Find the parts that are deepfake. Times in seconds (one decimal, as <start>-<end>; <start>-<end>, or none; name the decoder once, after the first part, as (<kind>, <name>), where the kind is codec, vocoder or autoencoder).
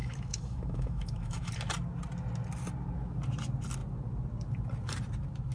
0.0-1.5 (autoencoder, DAC-VAE)